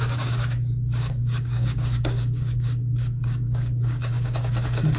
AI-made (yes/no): yes